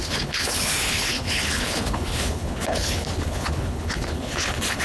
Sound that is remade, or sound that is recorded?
remade